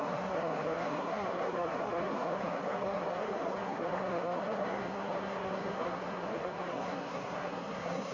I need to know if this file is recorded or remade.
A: remade